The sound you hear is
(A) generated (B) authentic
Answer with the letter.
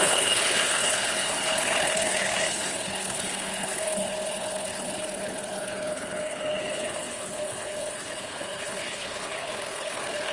A